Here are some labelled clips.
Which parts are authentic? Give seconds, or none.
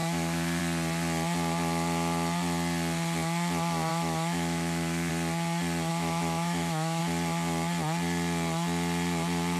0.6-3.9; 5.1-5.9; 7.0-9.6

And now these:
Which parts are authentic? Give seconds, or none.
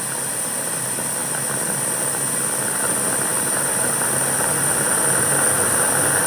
0.0-3.3; 3.9-6.3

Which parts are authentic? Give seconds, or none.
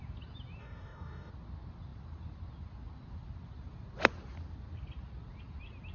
0.0-0.6; 1.3-5.9